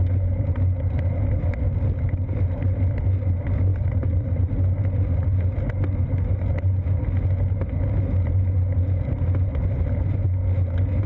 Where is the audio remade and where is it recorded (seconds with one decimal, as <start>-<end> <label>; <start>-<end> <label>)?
0.0-3.7 recorded; 3.7-4.5 remade; 4.5-11.1 recorded